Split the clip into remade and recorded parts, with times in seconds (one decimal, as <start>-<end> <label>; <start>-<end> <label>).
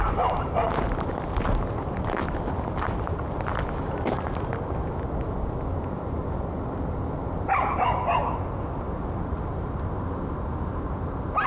0.0-11.5 recorded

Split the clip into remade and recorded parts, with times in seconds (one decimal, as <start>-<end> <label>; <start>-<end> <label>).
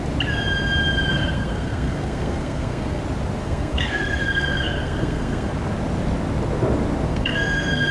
0.0-1.1 recorded; 1.1-3.0 remade; 3.0-3.4 recorded; 3.4-5.5 remade; 5.5-7.1 recorded; 7.1-7.9 remade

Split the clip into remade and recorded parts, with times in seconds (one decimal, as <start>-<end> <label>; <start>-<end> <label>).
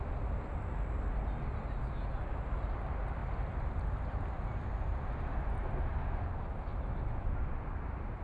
0.0-8.2 recorded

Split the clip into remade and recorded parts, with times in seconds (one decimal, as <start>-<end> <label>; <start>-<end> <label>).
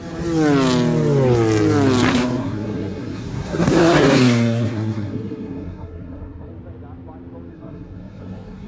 0.0-2.1 recorded; 2.1-6.5 remade; 6.5-7.5 recorded; 7.5-8.7 remade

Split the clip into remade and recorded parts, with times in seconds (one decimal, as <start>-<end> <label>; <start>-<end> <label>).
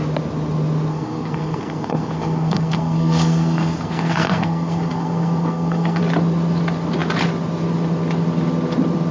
0.0-0.9 recorded; 0.9-6.0 remade; 6.0-9.1 recorded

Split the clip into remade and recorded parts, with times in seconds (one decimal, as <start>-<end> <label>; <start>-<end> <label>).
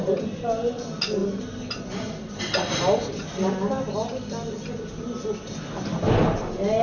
0.0-6.8 recorded